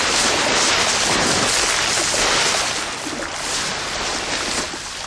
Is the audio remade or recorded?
recorded